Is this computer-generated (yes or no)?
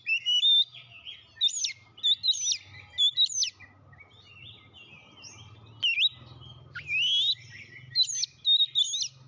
no